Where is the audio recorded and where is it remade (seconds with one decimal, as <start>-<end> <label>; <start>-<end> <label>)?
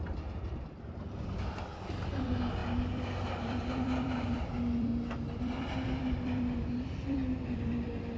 0.0-4.9 remade; 4.9-5.4 recorded; 5.4-8.2 remade